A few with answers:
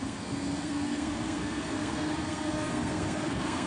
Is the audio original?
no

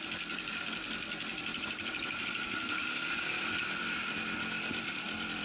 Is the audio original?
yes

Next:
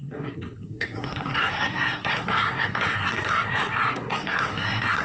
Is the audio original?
no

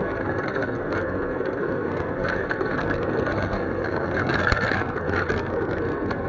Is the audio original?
no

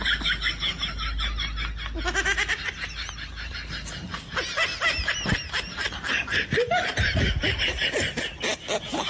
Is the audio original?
yes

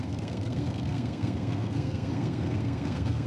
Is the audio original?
no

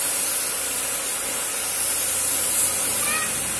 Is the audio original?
yes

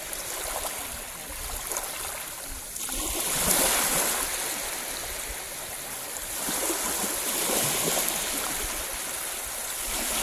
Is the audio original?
yes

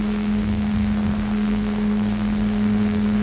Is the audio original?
no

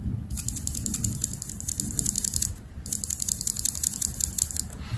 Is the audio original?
yes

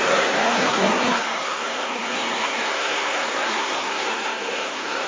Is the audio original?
no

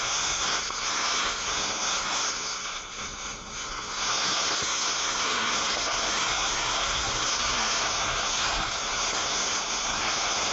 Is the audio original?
no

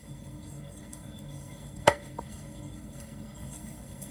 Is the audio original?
no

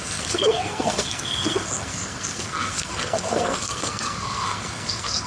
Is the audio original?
no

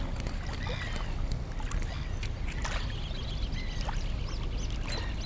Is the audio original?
yes